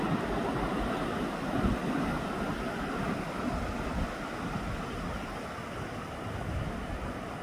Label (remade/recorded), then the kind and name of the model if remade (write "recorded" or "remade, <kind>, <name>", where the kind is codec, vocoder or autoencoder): recorded